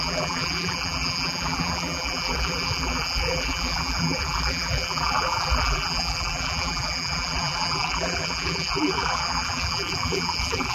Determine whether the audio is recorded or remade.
remade